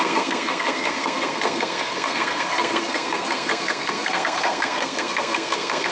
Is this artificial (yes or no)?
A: yes